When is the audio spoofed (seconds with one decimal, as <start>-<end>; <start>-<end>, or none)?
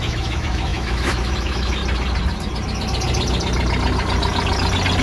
0.0-1.8